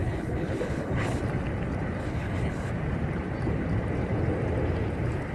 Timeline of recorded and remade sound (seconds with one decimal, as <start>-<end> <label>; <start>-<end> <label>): 0.0-1.2 remade; 1.2-2.0 recorded; 2.0-2.7 remade; 2.7-5.3 recorded